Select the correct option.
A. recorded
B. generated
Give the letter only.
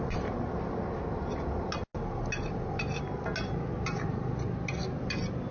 A